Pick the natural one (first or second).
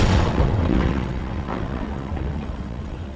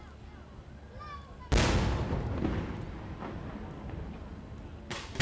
second